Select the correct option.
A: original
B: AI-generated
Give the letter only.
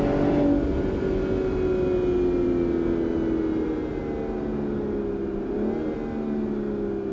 A